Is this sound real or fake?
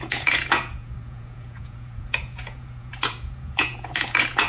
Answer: fake